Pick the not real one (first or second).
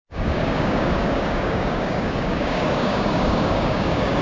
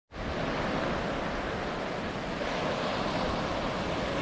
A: first